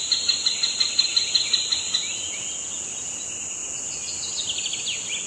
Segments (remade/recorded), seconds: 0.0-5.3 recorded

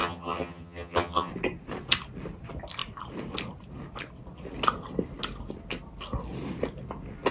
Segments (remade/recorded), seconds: 0.0-1.3 remade; 1.3-7.3 recorded

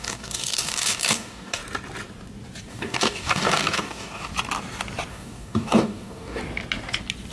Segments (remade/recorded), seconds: 0.0-1.6 remade; 1.6-2.7 recorded; 2.7-4.3 remade; 4.3-5.1 recorded; 5.1-6.4 remade; 6.4-7.3 recorded